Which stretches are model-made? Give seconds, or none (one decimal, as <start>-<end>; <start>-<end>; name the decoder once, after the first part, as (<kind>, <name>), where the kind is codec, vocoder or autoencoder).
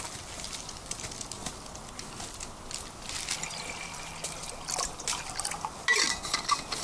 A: none